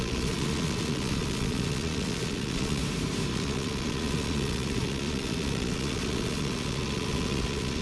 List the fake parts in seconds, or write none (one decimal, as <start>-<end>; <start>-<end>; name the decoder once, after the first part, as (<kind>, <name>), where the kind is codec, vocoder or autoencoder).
0.0-2.8 (vocoder, Vocos); 3.3-7.8